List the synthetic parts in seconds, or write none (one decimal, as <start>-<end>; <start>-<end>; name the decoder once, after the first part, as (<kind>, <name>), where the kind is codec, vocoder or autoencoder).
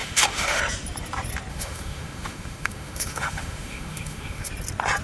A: 0.0-0.6 (autoencoder, DAC-VAE); 1.5-4.5